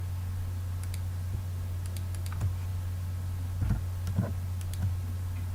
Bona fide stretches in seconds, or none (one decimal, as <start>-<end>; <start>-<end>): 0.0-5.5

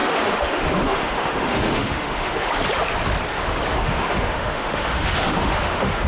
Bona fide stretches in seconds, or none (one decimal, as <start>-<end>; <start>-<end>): 2.5-3.8

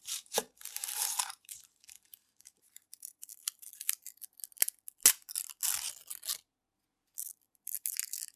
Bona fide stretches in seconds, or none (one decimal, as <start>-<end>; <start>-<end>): 3.3-8.4

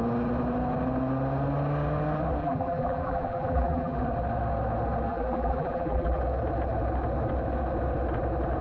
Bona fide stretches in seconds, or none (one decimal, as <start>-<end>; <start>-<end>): 0.0-2.4; 4.0-5.1; 6.2-8.6

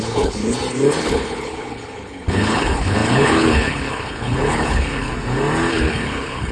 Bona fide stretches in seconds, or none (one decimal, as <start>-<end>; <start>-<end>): 0.4-1.0; 5.1-5.7

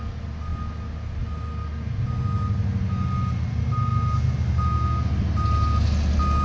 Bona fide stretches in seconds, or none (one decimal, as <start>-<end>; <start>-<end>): 0.0-6.4

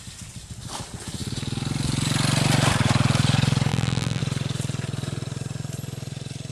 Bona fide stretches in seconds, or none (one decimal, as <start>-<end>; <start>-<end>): 0.0-3.7; 4.2-6.5

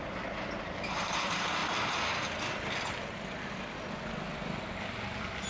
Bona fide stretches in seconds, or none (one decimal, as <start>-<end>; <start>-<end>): 0.0-5.5